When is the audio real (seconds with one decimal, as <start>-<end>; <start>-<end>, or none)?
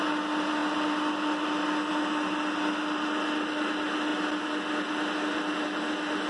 0.0-6.3